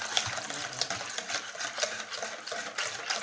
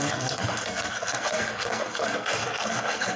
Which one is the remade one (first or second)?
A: second